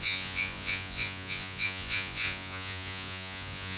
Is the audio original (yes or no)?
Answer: no